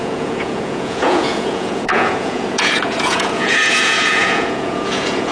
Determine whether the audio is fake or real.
fake